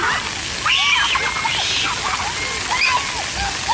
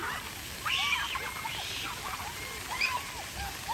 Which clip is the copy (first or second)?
second